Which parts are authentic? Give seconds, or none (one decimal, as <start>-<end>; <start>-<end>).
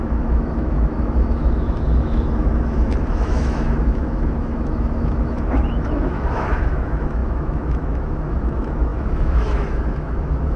none